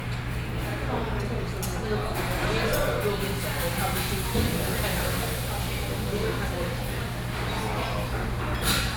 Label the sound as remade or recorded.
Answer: recorded